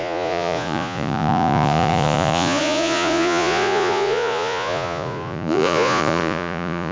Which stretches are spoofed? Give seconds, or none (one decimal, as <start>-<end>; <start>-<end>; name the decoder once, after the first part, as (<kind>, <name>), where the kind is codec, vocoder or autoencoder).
0.0-6.9 (vocoder, Vocos)